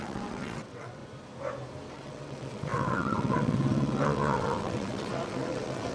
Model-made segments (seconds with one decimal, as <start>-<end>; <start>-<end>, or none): 0.0-1.0; 1.9-5.9